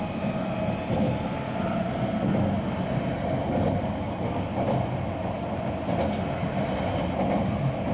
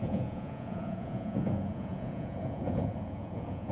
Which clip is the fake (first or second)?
second